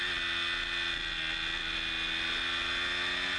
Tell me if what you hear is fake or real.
real